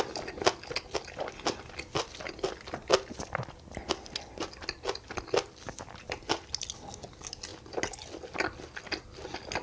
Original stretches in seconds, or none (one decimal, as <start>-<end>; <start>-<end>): 0.0-9.6